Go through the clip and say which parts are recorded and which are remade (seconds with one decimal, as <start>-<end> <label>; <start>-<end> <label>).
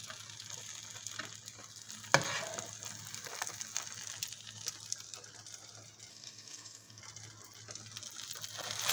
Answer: 0.0-6.1 recorded; 6.1-7.0 remade; 7.0-8.9 recorded